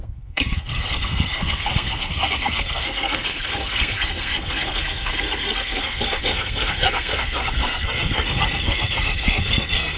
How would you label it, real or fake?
fake